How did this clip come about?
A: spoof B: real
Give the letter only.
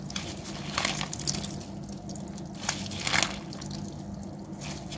B